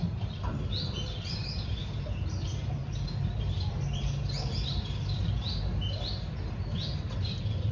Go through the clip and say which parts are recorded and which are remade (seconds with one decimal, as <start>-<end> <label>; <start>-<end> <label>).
0.0-7.7 recorded